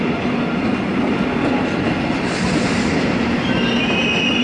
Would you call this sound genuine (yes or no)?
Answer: yes